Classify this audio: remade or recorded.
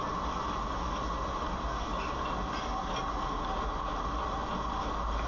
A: recorded